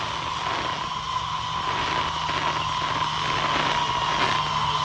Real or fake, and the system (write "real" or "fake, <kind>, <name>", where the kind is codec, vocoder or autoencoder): real